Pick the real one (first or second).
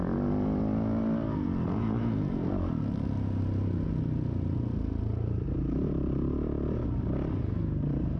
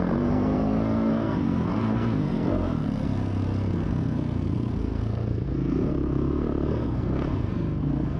first